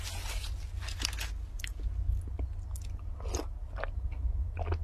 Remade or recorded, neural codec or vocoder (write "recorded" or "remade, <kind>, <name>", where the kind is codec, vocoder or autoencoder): recorded